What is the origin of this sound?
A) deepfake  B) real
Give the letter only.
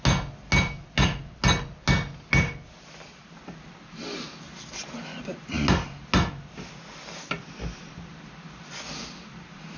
B